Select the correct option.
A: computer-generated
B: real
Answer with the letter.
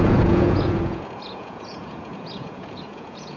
A